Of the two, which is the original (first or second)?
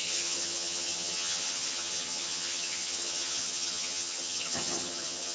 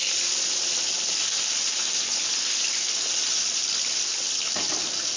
second